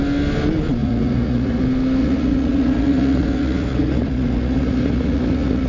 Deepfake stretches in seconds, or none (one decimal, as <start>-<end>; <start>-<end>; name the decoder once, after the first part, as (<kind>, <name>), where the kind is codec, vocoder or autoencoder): 0.8-1.6 (vocoder, Vocos); 2.0-5.7